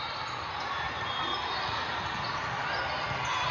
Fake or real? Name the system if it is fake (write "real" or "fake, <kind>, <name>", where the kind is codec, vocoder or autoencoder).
real